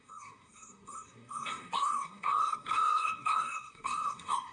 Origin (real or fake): fake